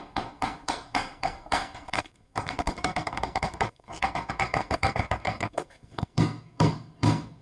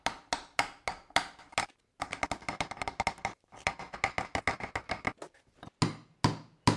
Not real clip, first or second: first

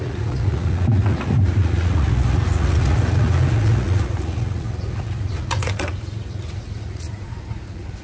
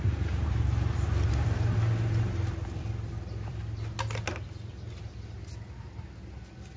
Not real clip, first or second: first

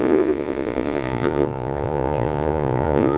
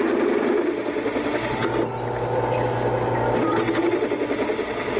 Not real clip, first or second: first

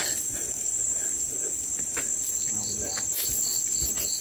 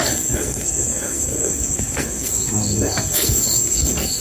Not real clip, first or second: second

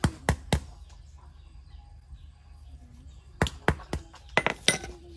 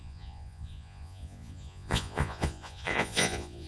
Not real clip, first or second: second